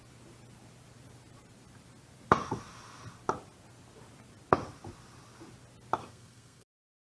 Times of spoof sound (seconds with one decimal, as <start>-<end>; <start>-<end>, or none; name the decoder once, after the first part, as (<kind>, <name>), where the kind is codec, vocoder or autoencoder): 6.0-7.1 (codec, SNAC)